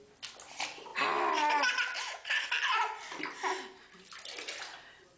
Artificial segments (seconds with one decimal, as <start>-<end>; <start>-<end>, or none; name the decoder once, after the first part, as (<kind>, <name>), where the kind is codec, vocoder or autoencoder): none